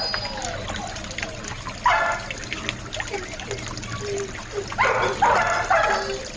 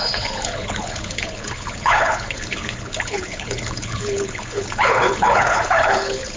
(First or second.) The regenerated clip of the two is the second